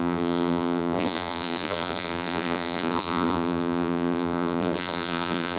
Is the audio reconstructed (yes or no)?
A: yes